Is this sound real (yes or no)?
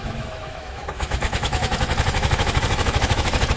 no